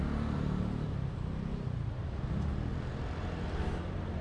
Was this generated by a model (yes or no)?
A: no